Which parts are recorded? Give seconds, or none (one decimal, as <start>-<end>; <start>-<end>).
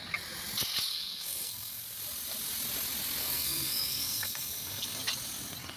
0.0-0.9; 1.8-3.2; 5.0-5.8